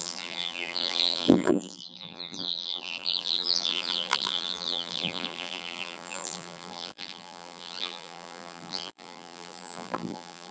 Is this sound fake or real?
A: fake